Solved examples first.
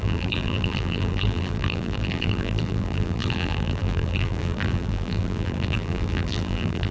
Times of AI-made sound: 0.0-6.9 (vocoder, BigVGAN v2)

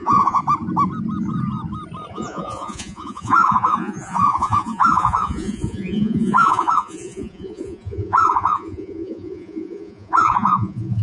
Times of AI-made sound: 0.0-0.4 (vocoder, Vocos); 2.1-11.0

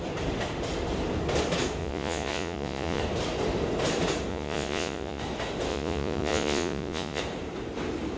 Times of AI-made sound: 1.8-3.0 (vocoder, Vocos); 4.3-5.2; 5.7-7.2

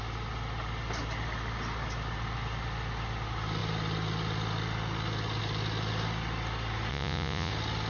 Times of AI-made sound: 6.9-7.5 (vocoder, Vocos)

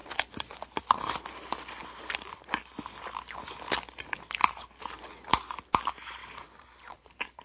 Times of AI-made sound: 1.8-2.6 (vocoder, BigVGAN v2); 4.4-5.0; 6.2-7.4

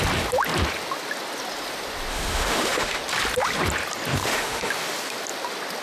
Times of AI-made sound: 2.1-3.0 (autoencoder, DAC-VAE); 4.2-4.7

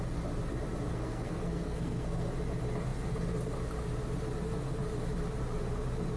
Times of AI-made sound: 0.9-2.3 (codec, SNAC)

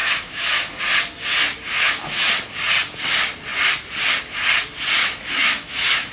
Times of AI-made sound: 0.0-0.8 (autoencoder, DAC-VAE); 1.7-2.3; 5.0-6.1